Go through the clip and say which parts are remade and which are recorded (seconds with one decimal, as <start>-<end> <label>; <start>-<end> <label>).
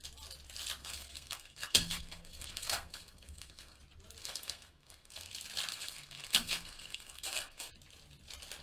0.0-0.8 recorded; 0.8-3.8 remade; 3.8-4.2 recorded; 4.2-5.3 remade; 5.3-5.7 recorded; 5.7-7.7 remade; 7.7-8.6 recorded